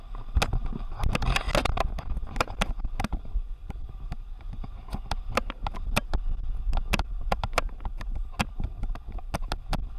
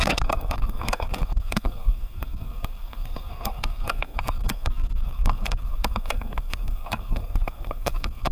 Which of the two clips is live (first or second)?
first